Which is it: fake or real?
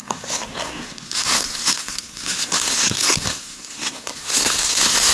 fake